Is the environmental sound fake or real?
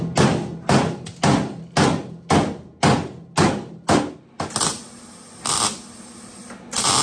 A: real